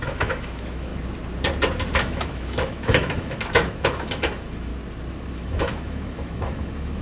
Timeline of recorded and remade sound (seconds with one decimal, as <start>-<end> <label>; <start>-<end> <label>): 0.0-0.9 remade; 0.9-2.0 recorded; 2.0-4.7 remade; 4.7-5.3 recorded; 5.3-7.0 remade

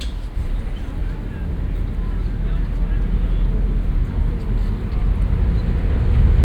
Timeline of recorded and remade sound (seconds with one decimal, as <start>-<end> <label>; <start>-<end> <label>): 0.0-6.4 recorded

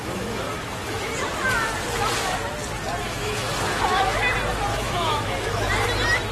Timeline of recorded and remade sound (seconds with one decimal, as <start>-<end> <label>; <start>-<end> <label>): 0.0-1.1 remade; 1.1-3.0 recorded; 3.0-4.2 remade; 4.2-4.7 recorded; 4.7-5.7 remade; 5.7-6.3 recorded

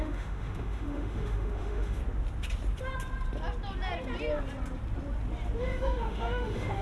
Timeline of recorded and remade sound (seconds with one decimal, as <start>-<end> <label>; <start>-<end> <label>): 0.0-2.0 remade; 2.0-5.6 recorded; 5.6-6.8 remade